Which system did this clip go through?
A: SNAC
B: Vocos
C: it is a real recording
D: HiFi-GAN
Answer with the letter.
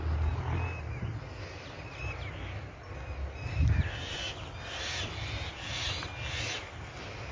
C